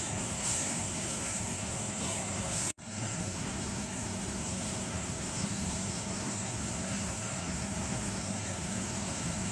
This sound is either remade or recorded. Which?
remade